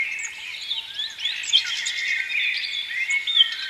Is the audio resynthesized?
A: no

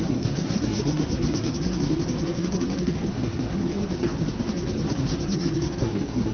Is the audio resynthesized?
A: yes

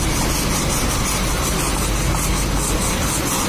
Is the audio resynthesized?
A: no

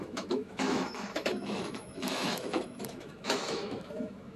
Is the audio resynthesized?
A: yes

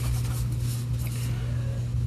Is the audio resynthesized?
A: no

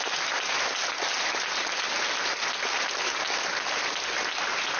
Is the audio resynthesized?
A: no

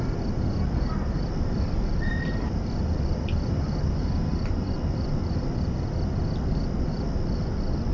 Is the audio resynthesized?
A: no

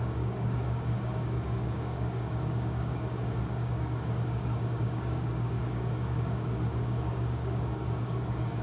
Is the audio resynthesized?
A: yes